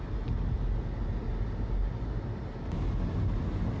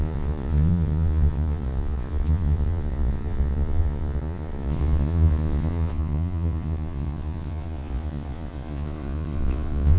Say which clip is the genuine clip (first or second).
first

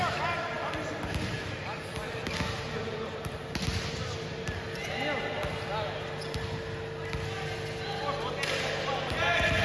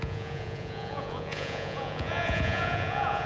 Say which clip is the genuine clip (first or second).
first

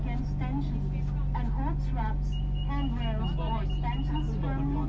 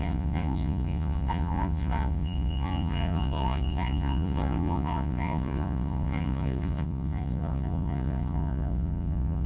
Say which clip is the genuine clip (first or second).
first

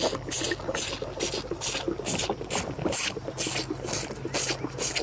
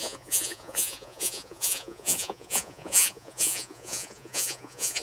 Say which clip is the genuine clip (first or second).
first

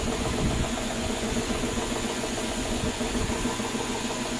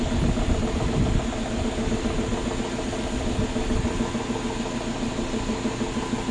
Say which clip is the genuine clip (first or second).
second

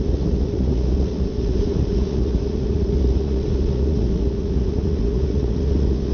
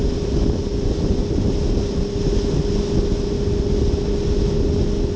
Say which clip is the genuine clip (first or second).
second